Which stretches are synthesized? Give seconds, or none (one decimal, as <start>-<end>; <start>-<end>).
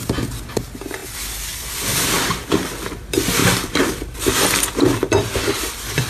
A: 1.0-2.5; 3.4-6.1